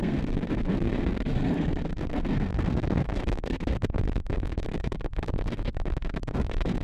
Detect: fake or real fake